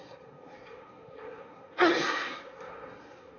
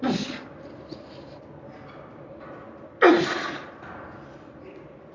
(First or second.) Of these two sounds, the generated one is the first